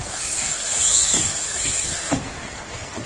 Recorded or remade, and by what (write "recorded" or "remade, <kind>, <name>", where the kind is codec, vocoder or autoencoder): remade, codec, SNAC